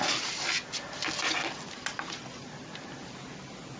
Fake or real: real